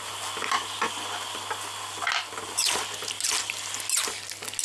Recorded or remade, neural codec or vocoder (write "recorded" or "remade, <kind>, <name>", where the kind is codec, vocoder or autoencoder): recorded